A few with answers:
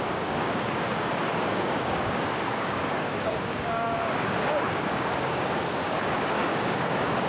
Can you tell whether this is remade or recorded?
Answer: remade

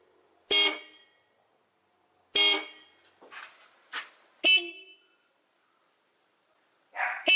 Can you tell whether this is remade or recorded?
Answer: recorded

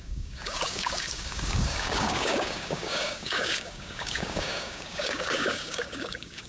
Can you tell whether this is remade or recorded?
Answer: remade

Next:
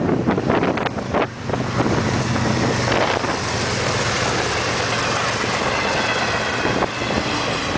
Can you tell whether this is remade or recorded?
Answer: recorded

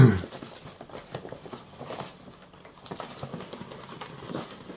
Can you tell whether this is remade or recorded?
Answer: recorded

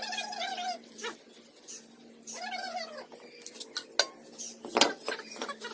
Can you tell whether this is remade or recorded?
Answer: recorded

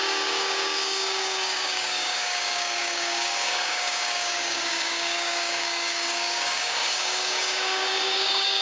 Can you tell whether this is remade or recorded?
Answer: remade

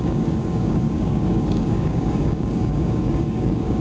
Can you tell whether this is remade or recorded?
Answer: remade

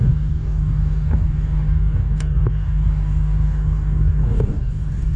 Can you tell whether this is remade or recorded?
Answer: remade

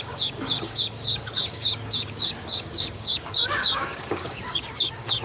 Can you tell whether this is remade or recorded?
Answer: remade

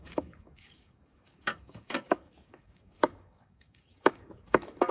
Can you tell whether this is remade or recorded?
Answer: remade